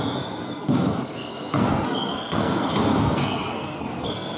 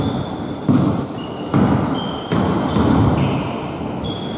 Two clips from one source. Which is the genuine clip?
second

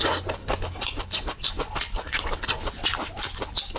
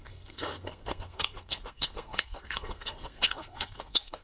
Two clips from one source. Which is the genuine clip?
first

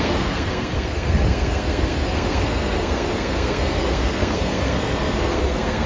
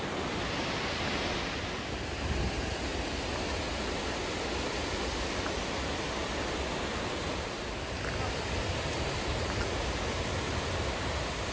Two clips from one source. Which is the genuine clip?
second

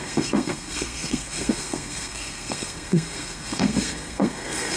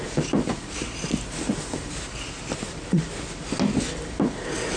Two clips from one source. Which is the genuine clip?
second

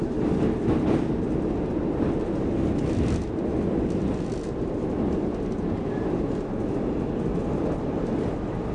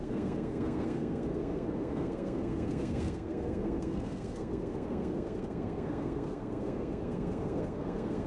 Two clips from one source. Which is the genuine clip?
first